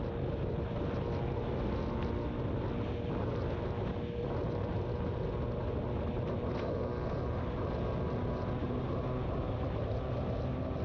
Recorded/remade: recorded